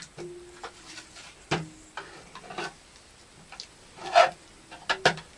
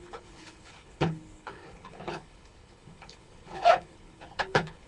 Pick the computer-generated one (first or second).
second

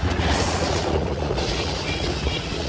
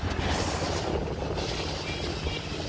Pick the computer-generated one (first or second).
first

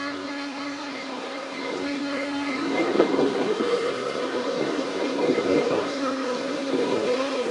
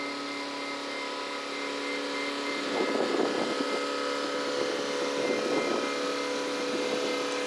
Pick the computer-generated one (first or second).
first